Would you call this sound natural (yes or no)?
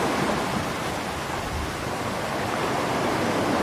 yes